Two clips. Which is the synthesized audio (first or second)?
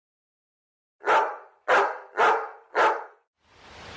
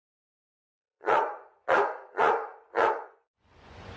second